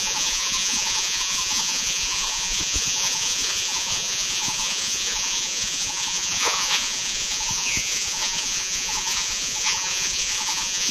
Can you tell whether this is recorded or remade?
remade